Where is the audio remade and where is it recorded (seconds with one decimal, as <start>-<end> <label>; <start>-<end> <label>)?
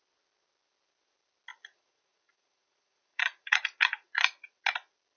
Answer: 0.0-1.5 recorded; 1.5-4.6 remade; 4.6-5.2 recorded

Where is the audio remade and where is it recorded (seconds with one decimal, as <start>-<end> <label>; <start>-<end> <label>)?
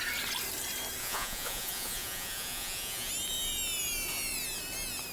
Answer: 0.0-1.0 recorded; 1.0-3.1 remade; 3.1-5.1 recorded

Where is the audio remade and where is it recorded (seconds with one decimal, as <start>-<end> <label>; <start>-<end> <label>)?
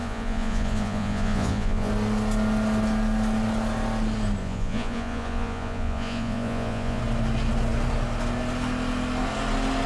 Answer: 0.0-1.9 remade; 1.9-4.4 recorded; 4.4-7.0 remade; 7.0-9.9 recorded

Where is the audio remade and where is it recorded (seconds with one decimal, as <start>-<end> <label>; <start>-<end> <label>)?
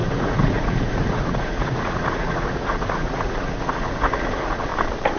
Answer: 0.0-4.7 remade; 4.7-5.2 recorded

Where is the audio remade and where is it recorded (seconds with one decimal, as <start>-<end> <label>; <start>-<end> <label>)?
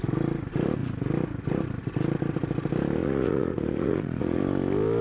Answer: 0.0-3.0 recorded; 3.0-4.4 remade; 4.4-5.0 recorded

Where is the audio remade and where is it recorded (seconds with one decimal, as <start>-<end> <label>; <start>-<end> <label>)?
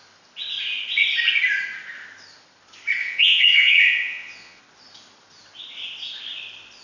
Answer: 0.0-3.0 recorded; 3.0-4.6 remade; 4.6-6.8 recorded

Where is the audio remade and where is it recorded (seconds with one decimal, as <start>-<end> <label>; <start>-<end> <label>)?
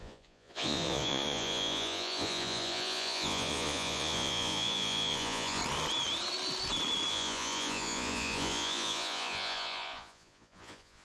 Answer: 0.0-5.6 remade; 5.6-7.1 recorded; 7.1-11.0 remade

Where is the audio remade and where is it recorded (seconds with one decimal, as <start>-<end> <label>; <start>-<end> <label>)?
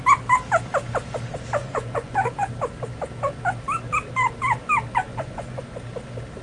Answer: 0.0-1.6 recorded; 1.6-2.3 remade; 2.3-4.9 recorded; 4.9-5.6 remade; 5.6-6.4 recorded